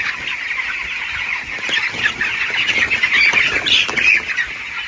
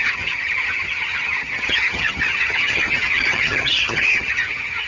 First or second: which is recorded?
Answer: first